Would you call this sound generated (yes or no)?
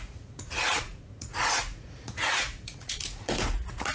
yes